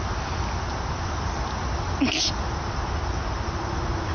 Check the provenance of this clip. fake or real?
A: real